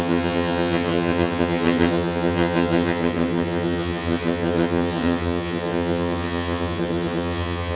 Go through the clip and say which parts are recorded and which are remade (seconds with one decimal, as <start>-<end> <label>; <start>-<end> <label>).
0.0-7.7 remade